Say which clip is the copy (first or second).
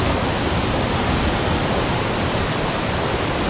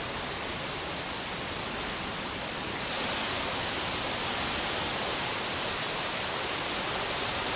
first